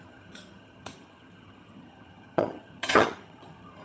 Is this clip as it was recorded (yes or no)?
no